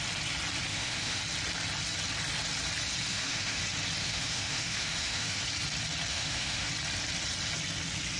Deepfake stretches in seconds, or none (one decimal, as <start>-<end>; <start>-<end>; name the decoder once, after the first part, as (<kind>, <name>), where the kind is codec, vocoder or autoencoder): 0.7-1.2 (autoencoder, DAC-VAE); 3.1-3.6; 4.0-5.4; 6.1-6.7